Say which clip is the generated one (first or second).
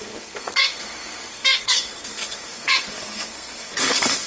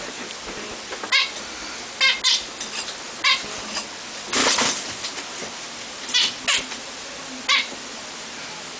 first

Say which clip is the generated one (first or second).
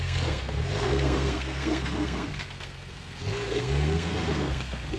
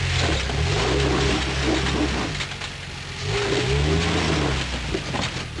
first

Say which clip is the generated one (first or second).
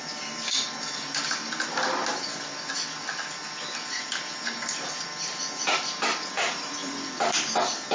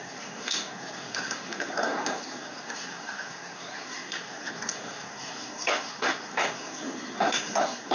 second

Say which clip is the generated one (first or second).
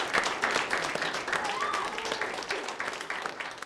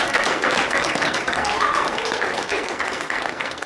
second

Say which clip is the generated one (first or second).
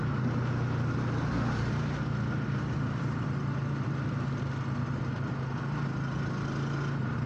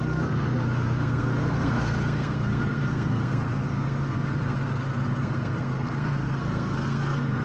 second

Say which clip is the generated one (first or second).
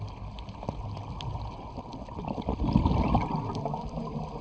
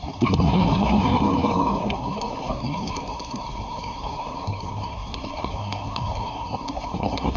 second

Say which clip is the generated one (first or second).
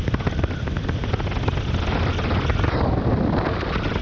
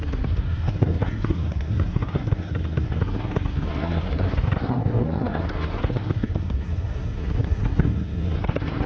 second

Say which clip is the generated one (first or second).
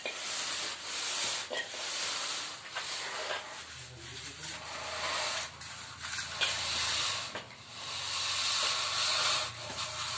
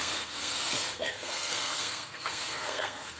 second